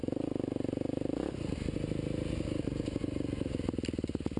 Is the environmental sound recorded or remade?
recorded